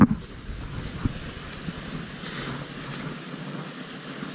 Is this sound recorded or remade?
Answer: recorded